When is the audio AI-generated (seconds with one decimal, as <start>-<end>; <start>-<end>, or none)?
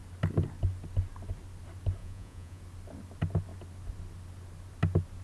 2.0-2.6